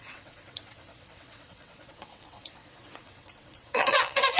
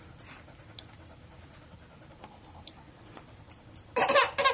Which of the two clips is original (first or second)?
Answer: second